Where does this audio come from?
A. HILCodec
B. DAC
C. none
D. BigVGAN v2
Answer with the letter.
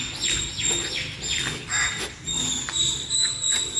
C